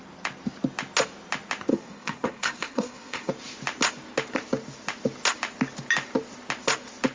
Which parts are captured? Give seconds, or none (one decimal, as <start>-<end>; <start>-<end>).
0.0-1.7; 3.3-7.1

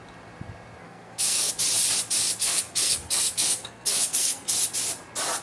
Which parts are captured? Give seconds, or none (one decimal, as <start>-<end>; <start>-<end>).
0.0-0.8; 1.5-2.4; 4.5-5.4

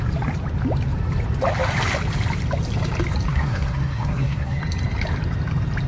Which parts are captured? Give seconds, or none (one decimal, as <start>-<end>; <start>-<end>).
0.0-3.3; 4.6-5.9

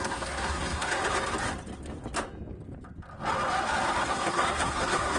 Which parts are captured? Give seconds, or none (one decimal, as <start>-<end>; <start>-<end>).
1.0-4.1